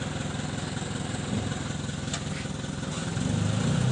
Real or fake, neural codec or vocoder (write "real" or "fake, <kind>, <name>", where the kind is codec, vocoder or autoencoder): real